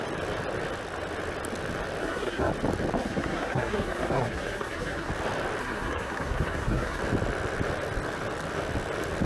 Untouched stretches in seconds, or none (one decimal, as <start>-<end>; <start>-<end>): 0.0-2.0; 2.5-3.0; 5.1-5.6; 7.0-9.3

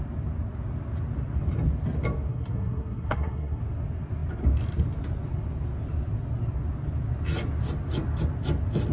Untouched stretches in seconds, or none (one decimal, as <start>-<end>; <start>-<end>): 0.0-2.3; 3.6-8.9